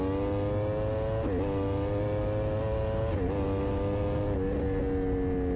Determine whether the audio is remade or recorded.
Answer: recorded